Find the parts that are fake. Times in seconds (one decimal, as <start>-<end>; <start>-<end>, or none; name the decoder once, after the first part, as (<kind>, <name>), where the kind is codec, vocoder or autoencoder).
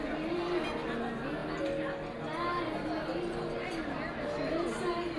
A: none